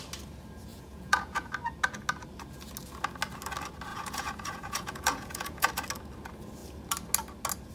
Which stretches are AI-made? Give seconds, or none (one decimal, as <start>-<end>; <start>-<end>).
0.7-1.5; 3.9-5.7